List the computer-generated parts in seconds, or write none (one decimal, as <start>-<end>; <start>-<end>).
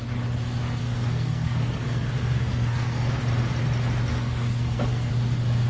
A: 0.8-3.2; 4.1-5.1